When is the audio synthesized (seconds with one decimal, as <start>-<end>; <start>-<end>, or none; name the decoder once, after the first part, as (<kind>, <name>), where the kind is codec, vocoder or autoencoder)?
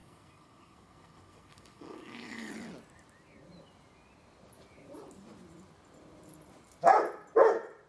0.0-2.5 (codec, SNAC)